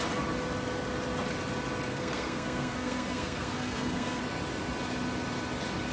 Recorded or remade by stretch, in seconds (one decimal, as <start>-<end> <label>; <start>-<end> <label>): 0.0-1.9 recorded; 1.9-4.2 remade; 4.2-5.9 recorded